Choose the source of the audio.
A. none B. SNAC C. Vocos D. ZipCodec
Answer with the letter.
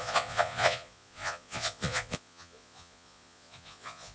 C